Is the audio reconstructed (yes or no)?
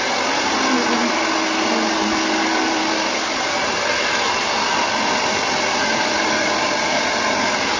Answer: no